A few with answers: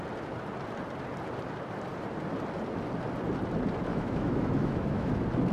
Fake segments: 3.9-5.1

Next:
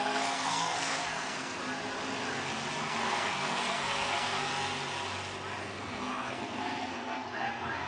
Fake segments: 0.0-1.6; 2.8-4.5; 5.6-7.9

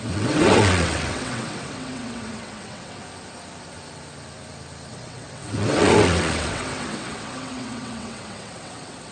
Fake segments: 0.0-3.0; 4.9-9.1

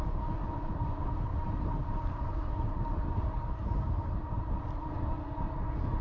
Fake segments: 1.3-4.9

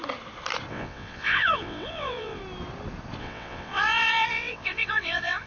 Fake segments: 0.7-2.4; 3.2-5.5